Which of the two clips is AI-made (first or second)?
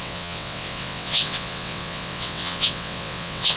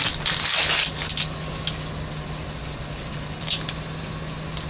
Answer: first